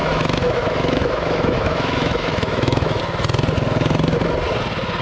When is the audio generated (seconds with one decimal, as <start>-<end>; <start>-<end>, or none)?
0.0-3.0